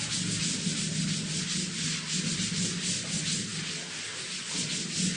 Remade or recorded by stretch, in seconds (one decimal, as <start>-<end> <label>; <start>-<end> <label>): 0.0-5.2 recorded